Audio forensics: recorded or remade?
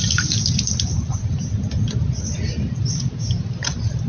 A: recorded